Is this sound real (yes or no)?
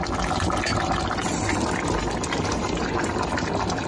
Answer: yes